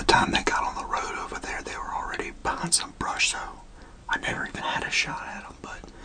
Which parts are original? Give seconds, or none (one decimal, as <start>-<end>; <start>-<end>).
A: 0.0-4.0; 4.6-6.0